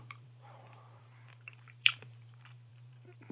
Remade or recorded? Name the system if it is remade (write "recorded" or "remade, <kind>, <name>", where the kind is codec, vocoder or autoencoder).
remade, vocoder, BigVGAN v2